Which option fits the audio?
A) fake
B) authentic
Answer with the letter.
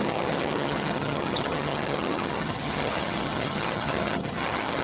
A